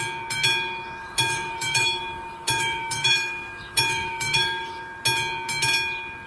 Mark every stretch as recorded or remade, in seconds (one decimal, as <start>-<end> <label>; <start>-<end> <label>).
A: 0.0-1.0 recorded; 1.0-4.8 remade; 4.8-6.3 recorded